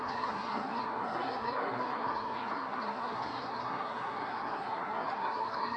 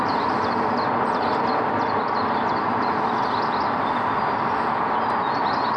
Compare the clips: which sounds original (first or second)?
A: second